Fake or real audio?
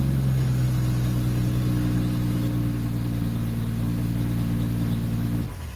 real